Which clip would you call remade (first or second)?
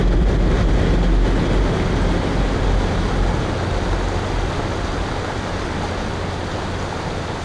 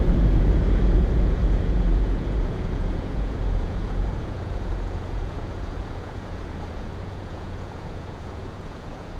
second